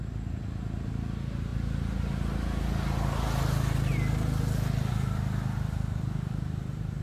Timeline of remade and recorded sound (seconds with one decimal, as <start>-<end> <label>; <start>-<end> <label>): 0.0-7.0 recorded

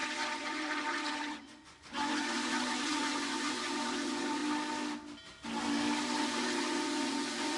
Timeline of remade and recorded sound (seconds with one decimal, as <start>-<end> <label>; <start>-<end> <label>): 0.0-4.4 remade; 4.4-6.2 recorded; 6.2-7.6 remade

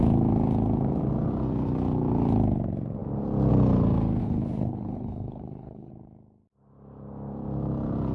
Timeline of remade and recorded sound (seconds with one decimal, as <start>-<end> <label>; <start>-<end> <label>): 0.0-4.2 recorded; 4.2-5.9 remade; 5.9-8.1 recorded

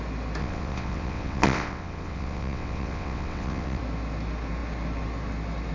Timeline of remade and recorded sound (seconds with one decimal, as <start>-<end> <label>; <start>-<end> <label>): 0.0-0.4 recorded; 0.4-3.8 remade; 3.8-5.7 recorded

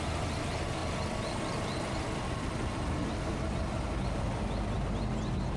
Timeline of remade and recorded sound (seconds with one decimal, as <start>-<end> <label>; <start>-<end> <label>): 0.0-5.6 recorded